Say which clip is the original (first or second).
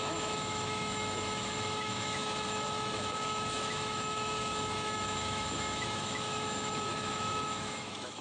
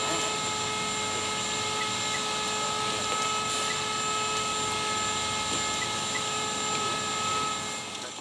second